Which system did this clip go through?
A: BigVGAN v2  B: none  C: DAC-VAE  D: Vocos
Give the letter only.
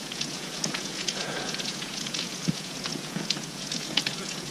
D